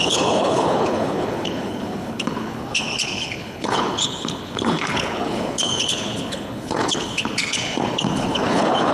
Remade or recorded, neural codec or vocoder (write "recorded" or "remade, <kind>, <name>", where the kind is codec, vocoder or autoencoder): remade, codec, HILCodec